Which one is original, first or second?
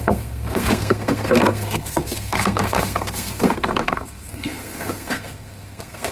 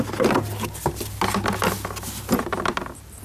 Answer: second